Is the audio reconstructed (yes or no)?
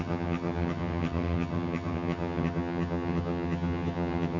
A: yes